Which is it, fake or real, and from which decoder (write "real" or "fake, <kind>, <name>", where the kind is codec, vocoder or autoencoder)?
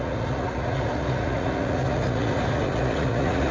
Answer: fake, vocoder, Vocos